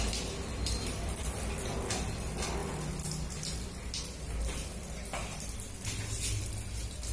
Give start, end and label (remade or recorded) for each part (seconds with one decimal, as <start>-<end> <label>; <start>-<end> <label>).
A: 0.0-0.5 recorded; 0.5-1.7 remade; 1.7-7.1 recorded